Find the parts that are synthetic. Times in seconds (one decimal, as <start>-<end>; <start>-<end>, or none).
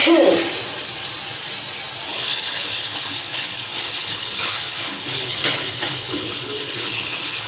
2.1-7.5